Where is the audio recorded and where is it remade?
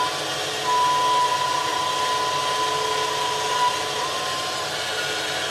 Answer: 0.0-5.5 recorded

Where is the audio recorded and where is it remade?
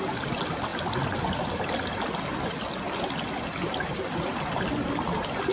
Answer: 0.0-5.5 recorded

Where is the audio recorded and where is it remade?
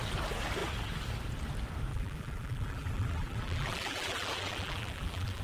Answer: 0.0-1.9 recorded; 1.9-5.4 remade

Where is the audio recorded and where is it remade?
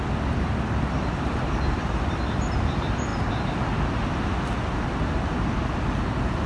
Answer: 0.0-6.5 recorded